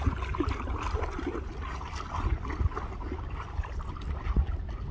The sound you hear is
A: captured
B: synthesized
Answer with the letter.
A